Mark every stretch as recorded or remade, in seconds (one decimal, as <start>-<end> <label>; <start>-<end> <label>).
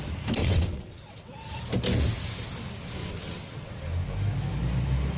0.0-0.4 recorded; 0.4-1.5 remade; 1.5-3.0 recorded; 3.0-3.8 remade; 3.8-5.2 recorded